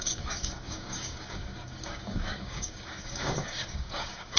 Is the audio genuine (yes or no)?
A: no